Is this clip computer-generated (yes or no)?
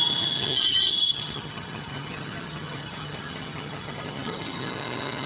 yes